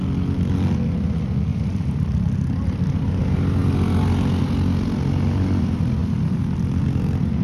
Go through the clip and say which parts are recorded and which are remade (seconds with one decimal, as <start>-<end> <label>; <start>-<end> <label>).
0.0-1.5 recorded; 1.5-3.2 remade; 3.2-7.4 recorded